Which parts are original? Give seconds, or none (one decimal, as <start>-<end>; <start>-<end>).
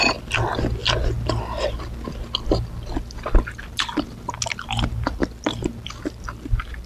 0.0-6.9